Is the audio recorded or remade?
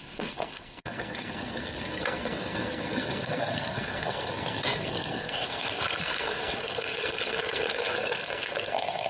remade